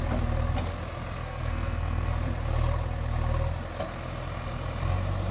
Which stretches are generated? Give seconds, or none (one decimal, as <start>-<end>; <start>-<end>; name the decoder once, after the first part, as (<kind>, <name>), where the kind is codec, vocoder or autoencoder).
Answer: 1.2-2.1 (codec, SNAC)

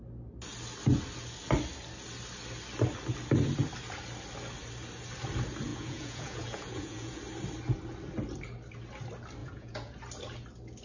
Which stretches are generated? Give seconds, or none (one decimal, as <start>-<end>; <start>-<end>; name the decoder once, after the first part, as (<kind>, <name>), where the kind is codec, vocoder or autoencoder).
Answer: 5.7-7.2 (vocoder, Vocos); 9.4-10.0

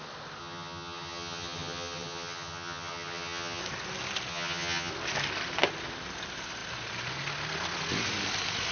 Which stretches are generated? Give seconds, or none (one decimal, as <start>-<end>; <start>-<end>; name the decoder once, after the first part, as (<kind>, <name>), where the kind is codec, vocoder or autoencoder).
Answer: 0.4-3.6 (vocoder, HiFi-GAN); 4.3-4.9

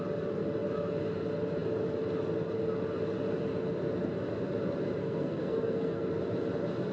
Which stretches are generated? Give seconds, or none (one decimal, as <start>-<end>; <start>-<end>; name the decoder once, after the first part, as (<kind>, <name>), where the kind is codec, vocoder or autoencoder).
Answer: 5.0-6.1 (codec, SNAC)